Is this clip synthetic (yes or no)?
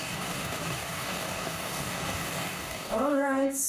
yes